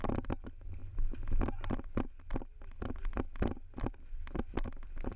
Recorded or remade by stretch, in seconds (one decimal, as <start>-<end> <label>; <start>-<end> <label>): 0.0-5.2 recorded